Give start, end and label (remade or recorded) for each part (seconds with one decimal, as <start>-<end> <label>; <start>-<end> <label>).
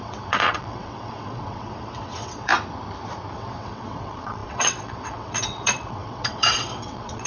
0.0-2.5 remade; 2.5-3.3 recorded; 3.3-7.3 remade